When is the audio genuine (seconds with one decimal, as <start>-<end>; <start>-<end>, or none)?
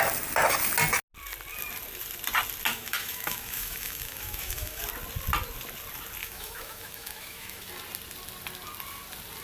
0.0-2.7; 4.8-6.2; 7.7-9.4